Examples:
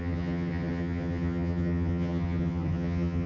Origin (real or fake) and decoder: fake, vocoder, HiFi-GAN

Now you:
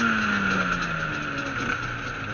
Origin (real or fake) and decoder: real